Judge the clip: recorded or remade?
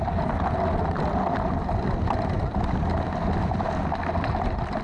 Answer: recorded